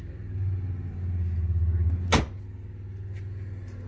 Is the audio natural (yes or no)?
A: yes